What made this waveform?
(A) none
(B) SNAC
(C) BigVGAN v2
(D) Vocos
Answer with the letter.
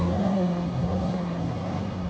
B